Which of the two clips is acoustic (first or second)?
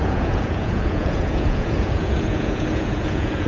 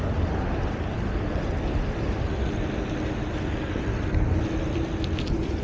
second